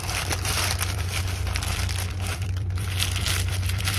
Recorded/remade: remade